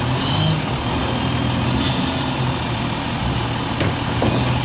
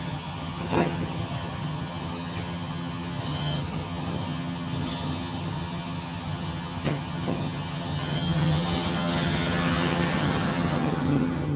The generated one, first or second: second